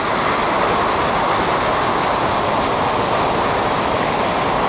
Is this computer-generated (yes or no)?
no